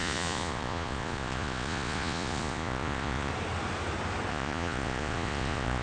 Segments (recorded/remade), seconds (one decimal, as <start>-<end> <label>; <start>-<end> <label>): 0.0-3.3 remade; 3.3-4.3 recorded; 4.3-5.8 remade